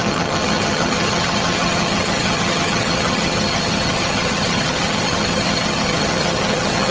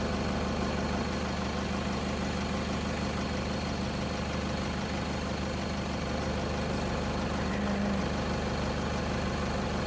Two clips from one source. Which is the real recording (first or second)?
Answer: second